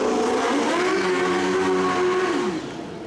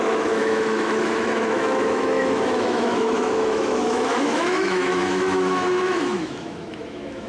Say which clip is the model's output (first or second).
second